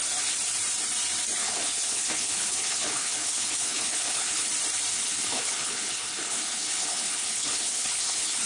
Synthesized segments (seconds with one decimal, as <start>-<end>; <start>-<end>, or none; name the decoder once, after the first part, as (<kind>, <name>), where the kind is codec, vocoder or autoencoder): 1.4-4.5 (codec, HILCodec); 4.9-8.5